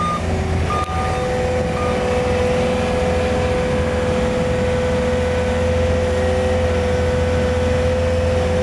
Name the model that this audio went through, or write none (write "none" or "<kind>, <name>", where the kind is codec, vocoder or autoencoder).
none